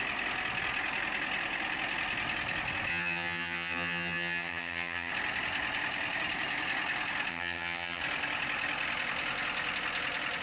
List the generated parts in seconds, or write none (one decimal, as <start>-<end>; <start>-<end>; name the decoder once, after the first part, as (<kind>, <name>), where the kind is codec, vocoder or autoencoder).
2.9-5.1 (vocoder, HiFi-GAN); 7.3-8.0